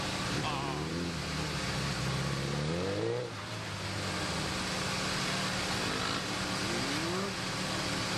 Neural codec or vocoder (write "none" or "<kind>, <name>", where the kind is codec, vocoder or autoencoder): none